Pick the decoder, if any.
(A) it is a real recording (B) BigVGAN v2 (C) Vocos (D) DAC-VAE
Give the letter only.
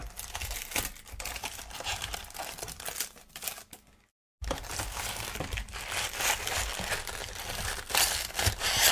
A